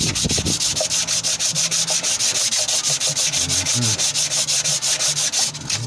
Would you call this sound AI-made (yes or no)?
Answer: no